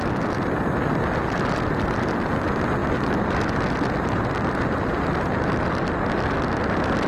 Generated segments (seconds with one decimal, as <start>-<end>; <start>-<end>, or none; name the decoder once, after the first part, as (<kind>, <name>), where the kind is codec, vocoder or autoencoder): none